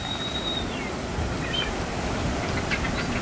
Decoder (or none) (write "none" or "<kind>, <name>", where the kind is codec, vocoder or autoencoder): none